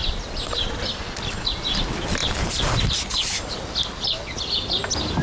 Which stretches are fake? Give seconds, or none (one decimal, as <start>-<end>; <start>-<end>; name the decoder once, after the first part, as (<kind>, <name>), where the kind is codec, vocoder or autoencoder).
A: 0.0-1.4 (vocoder, BigVGAN v2); 2.2-3.4